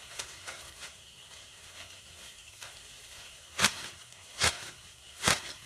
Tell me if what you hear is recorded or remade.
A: remade